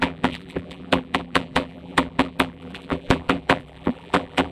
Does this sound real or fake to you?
fake